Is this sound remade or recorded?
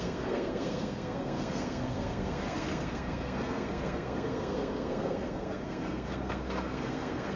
remade